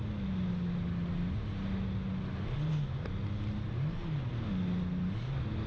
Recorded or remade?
recorded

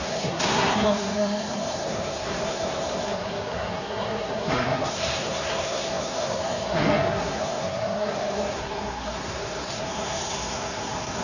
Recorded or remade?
remade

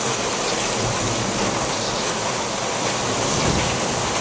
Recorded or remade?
recorded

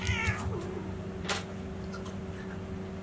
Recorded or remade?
recorded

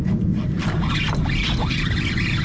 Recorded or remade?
recorded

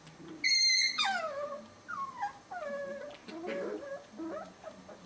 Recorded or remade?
recorded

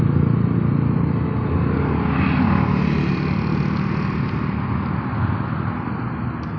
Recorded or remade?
recorded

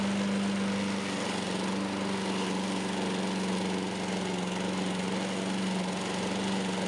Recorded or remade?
recorded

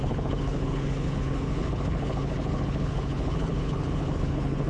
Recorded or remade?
remade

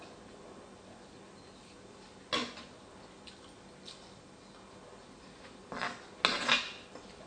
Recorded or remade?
recorded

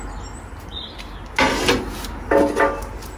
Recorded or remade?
recorded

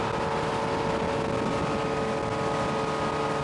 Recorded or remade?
recorded